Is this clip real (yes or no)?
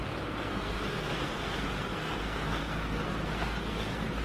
no